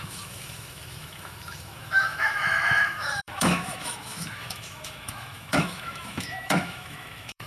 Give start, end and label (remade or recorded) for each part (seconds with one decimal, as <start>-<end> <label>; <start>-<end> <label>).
0.0-7.5 remade